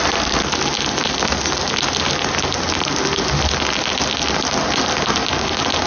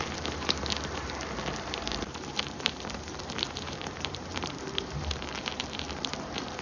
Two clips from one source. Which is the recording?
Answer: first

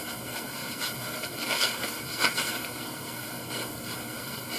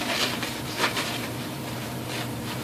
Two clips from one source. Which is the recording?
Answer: second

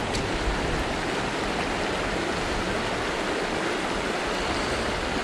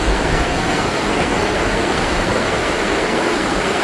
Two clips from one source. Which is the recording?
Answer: first